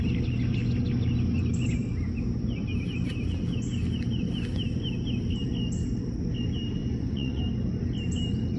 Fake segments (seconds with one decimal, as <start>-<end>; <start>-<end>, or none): 6.8-7.4

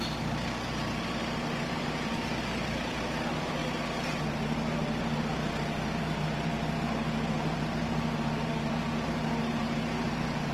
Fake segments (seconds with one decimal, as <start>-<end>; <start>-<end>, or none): 0.0-3.6; 4.2-10.5

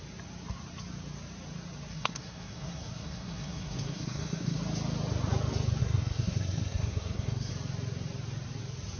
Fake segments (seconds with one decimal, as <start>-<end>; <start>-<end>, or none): 1.9-4.6; 5.8-7.5

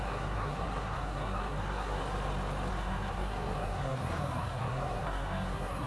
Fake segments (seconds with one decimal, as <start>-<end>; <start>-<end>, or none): 0.0-2.0; 2.7-5.9

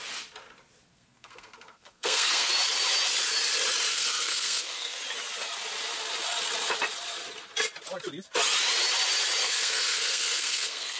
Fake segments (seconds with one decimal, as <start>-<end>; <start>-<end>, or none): 0.9-2.5; 3.9-5.0; 9.4-11.0

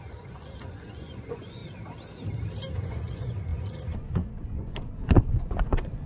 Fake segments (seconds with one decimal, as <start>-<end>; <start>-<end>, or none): 0.0-1.6; 2.7-6.1

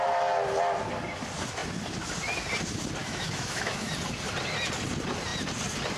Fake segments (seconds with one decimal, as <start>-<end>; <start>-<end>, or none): 3.0-3.9